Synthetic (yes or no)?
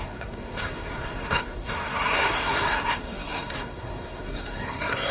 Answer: yes